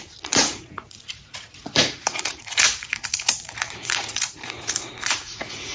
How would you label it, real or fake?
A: fake